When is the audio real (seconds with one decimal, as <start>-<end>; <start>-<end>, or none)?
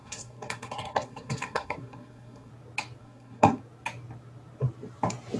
2.5-3.0; 3.6-5.4